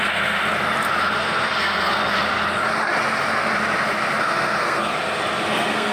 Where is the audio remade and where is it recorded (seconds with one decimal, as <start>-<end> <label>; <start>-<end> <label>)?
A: 0.0-0.4 remade; 0.4-1.0 recorded; 1.0-2.0 remade; 2.0-4.2 recorded; 4.2-4.9 remade; 4.9-5.5 recorded; 5.5-5.9 remade